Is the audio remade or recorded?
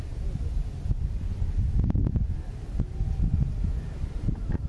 recorded